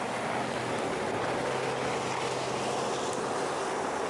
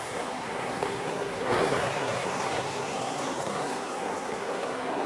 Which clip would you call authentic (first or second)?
first